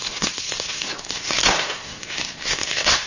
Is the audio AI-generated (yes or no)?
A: yes